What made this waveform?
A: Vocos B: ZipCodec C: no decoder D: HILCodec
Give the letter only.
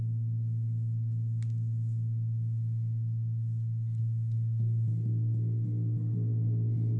C